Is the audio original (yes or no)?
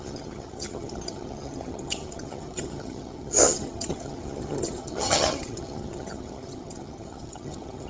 no